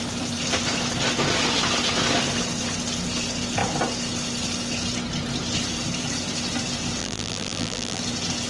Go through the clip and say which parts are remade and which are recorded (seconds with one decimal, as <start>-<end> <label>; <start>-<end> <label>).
0.0-7.0 recorded; 7.0-8.0 remade; 8.0-8.5 recorded